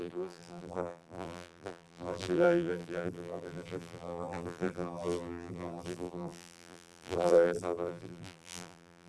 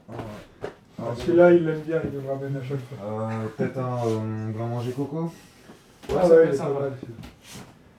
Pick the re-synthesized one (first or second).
first